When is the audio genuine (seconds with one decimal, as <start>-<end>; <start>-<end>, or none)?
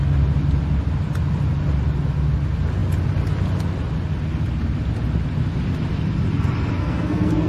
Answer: 0.0-6.8